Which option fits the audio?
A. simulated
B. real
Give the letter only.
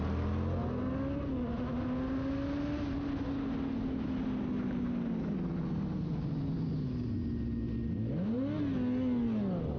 B